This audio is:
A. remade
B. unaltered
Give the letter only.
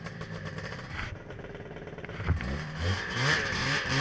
A